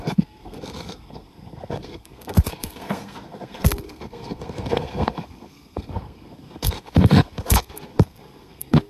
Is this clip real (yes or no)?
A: no